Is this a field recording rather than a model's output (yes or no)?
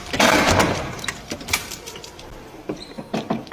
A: no